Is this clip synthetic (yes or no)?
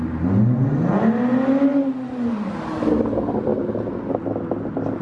no